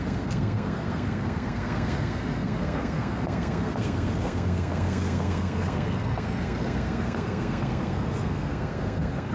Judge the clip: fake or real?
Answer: fake